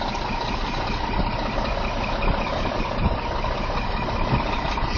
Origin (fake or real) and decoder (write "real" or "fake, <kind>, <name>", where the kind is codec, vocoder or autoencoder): real